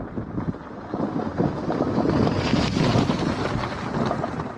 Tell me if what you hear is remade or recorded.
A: recorded